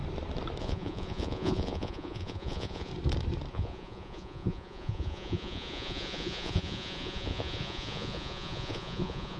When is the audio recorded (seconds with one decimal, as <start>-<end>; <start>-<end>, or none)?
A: 0.0-0.6; 2.9-3.5